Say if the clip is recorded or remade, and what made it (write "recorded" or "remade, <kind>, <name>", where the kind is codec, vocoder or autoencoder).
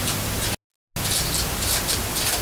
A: recorded